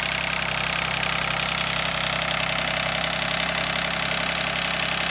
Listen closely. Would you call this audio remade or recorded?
recorded